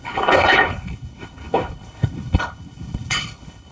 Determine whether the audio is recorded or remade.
remade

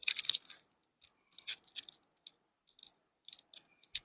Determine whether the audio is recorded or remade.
recorded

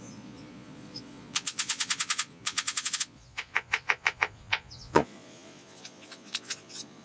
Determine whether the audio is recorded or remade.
remade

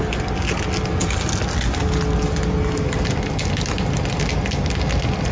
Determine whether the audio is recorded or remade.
recorded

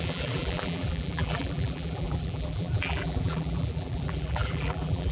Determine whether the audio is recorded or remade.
remade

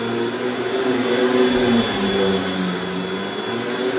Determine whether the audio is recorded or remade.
recorded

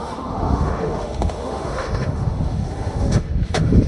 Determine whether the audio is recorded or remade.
remade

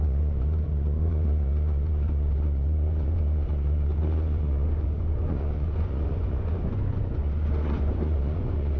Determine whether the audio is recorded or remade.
remade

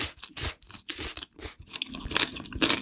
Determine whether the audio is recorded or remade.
recorded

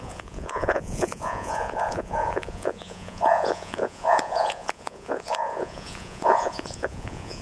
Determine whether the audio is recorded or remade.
remade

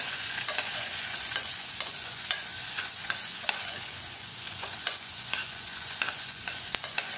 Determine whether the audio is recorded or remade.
remade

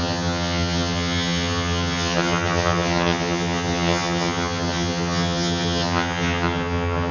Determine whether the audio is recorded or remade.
remade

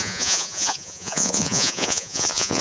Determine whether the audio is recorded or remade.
remade